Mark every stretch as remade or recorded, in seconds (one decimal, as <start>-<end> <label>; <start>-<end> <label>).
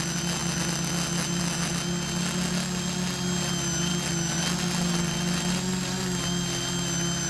0.0-7.3 recorded